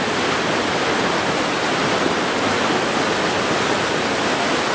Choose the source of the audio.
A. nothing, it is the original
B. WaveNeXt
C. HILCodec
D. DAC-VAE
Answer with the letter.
A